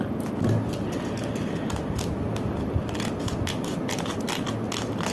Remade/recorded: recorded